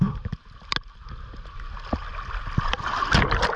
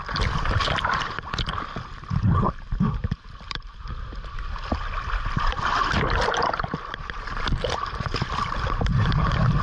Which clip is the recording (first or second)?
first